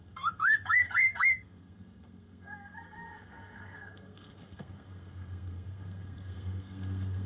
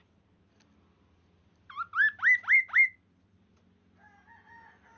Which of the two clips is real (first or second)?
second